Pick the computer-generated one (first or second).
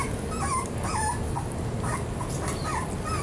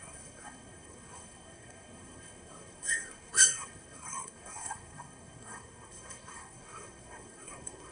second